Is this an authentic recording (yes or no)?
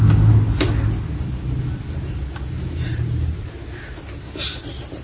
yes